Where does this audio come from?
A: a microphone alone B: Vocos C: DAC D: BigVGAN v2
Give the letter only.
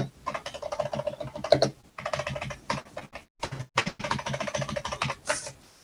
A